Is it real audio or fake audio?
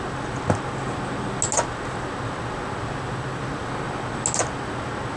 real